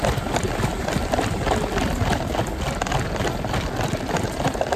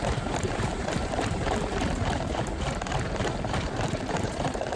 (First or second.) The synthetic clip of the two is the second